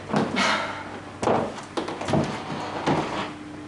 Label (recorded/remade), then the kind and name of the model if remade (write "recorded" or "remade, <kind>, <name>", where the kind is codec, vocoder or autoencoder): recorded